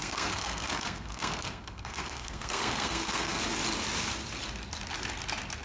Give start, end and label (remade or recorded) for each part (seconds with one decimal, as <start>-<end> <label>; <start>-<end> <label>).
0.0-3.4 remade; 3.4-5.6 recorded